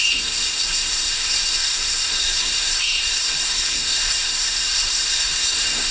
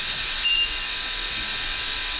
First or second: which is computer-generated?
first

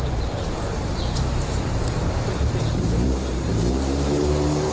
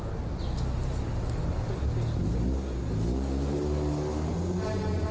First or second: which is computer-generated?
first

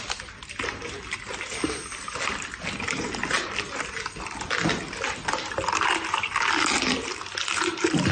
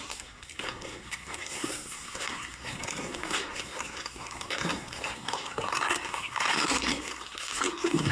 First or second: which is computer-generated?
second